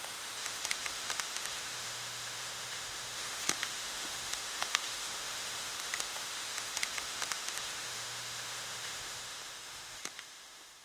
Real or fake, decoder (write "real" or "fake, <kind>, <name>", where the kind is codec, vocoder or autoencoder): fake, autoencoder, DAC-VAE